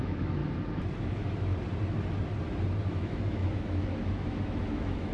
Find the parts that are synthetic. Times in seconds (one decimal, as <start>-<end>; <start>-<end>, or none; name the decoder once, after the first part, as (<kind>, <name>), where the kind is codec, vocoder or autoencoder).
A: 0.0-0.4 (autoencoder, DAC-VAE); 1.0-1.5; 2.9-5.1